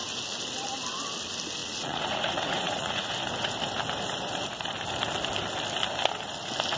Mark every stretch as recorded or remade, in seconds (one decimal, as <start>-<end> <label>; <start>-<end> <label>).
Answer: 0.0-1.6 recorded; 1.6-3.1 remade; 3.1-6.8 recorded